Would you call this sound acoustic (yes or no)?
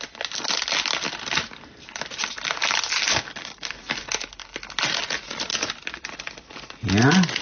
yes